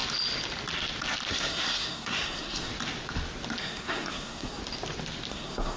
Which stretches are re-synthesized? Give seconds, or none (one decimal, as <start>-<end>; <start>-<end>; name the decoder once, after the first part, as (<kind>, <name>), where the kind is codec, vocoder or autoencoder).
1.3-2.7 (codec, SNAC); 3.6-4.6; 5.3-5.8